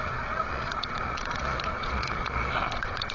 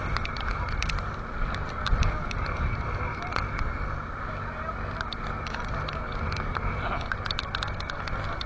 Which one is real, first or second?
second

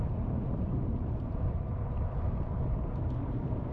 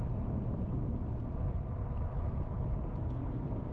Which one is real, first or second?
second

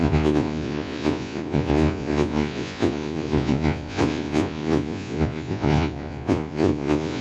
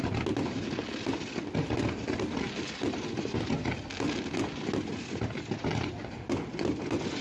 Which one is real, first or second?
second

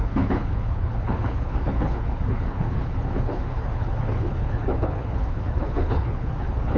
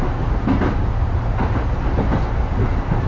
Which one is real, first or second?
second